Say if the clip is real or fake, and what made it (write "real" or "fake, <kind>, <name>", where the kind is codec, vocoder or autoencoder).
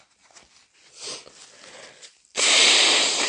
real